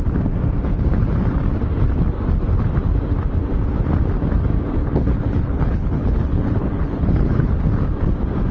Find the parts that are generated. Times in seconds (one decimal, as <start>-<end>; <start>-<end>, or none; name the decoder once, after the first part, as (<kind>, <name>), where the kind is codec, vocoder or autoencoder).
4.8-7.6 (codec, HILCodec)

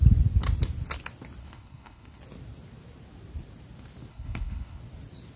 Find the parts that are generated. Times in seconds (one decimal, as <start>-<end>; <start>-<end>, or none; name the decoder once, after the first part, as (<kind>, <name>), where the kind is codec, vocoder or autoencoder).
1.4-2.2 (codec, HILCodec); 4.1-4.8

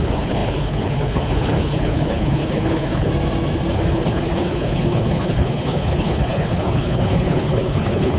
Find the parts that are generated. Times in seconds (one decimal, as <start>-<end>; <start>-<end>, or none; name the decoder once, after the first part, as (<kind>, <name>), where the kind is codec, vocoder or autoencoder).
0.0-3.1 (codec, HILCodec); 3.7-8.2